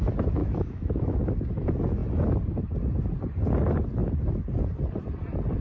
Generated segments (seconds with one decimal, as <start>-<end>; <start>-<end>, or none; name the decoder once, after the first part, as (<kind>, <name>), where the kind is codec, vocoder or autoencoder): 0.4-1.1 (autoencoder, DAC-VAE)